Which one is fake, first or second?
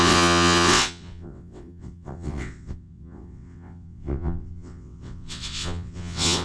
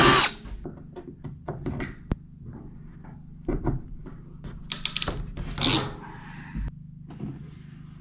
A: first